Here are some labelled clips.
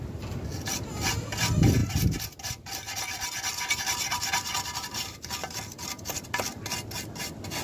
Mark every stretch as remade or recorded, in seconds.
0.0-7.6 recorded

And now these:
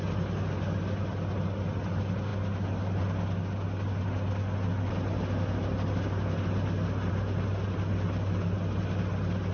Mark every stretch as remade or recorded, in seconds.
0.0-9.5 recorded

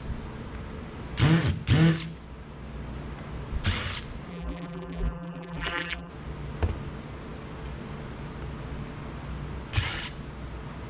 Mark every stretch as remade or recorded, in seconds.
0.0-4.3 recorded; 4.3-6.1 remade; 6.1-10.9 recorded

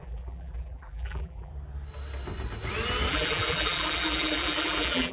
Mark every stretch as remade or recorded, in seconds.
0.0-1.5 remade; 1.5-3.1 recorded; 3.1-5.1 remade

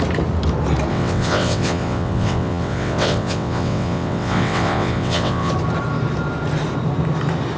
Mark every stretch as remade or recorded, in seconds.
0.0-0.9 recorded; 0.9-5.5 remade; 5.5-7.6 recorded

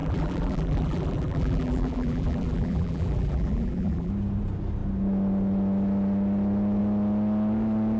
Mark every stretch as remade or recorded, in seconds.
0.0-4.1 remade; 4.1-8.0 recorded

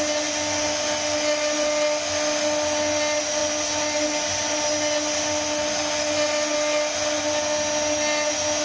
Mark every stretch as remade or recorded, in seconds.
0.0-8.6 recorded